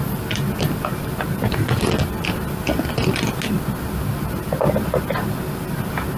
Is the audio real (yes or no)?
yes